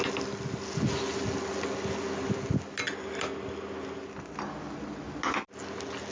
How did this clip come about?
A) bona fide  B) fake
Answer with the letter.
A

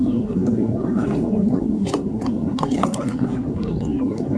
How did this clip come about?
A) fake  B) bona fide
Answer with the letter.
A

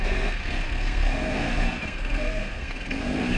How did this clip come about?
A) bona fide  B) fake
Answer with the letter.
B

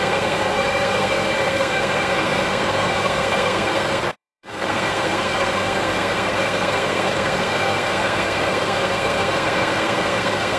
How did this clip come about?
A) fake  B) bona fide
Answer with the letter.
A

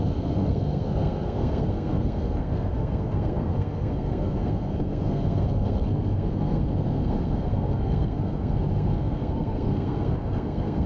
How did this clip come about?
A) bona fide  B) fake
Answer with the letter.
B